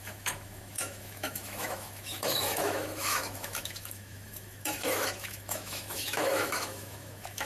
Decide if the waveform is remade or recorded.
remade